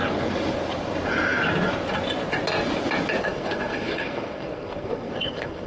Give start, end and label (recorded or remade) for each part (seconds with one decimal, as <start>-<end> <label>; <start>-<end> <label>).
0.0-3.2 recorded; 3.2-5.7 remade